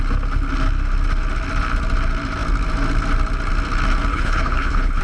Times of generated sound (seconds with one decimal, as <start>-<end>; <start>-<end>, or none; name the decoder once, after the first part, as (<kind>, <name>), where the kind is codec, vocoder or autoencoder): 4.1-5.0 (codec, HILCodec)